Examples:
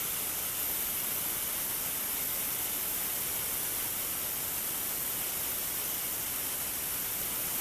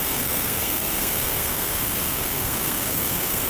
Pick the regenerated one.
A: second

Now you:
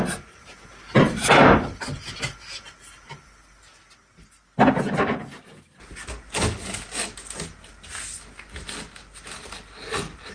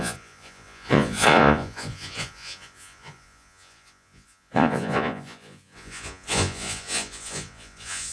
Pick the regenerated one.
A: second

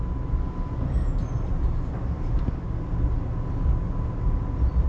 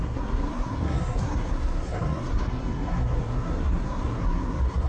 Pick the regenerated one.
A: second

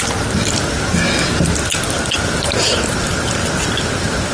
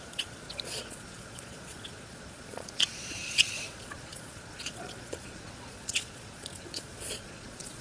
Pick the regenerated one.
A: second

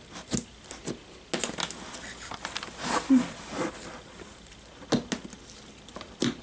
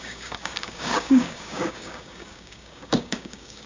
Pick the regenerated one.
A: second